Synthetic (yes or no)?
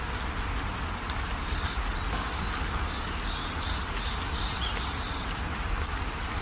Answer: no